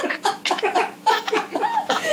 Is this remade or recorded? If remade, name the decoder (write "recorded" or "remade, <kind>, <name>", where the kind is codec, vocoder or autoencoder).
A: remade, autoencoder, DAC-VAE